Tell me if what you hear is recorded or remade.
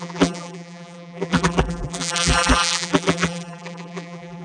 remade